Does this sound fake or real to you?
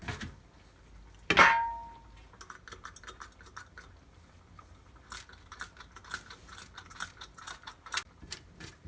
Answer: real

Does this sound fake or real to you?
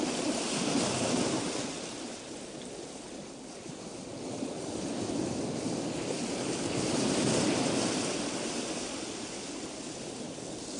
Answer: real